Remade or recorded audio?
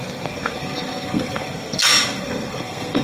remade